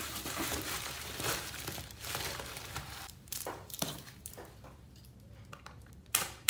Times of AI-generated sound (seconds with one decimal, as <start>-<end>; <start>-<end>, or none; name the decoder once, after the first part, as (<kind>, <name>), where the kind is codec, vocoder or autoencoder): 0.0-4.3 (vocoder, BigVGAN v2); 5.6-6.5

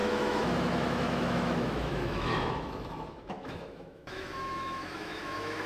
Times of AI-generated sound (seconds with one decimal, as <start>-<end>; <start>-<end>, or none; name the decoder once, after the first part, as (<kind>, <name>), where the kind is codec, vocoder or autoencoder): 0.0-5.7 (autoencoder, DAC-VAE)

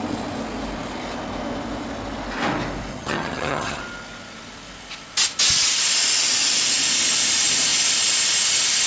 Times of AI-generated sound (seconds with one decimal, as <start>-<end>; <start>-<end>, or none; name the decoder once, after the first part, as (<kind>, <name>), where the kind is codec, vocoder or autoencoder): 2.9-3.8 (vocoder, HiFi-GAN)

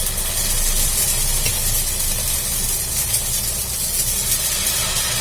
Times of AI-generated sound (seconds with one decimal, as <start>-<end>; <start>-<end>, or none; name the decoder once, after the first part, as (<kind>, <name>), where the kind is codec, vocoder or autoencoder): none